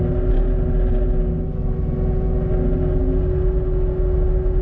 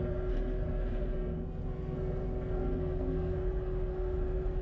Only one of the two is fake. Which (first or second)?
second